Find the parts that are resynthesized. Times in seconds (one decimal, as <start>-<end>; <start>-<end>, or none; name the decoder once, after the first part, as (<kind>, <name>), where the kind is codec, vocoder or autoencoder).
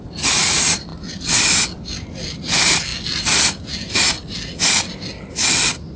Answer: none